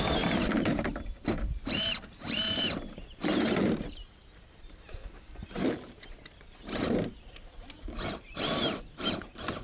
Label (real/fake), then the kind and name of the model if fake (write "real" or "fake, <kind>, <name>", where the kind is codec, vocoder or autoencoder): fake, vocoder, BigVGAN v2